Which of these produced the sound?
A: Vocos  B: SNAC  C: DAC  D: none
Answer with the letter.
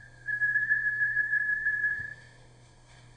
B